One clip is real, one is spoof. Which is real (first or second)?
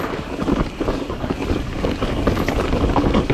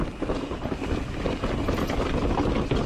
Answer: second